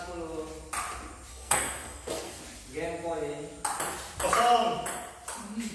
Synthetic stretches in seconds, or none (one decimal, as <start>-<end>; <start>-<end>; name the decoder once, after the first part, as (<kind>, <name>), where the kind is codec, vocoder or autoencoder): 1.3-2.4 (codec, SNAC)